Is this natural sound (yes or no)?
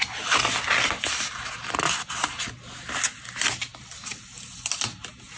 yes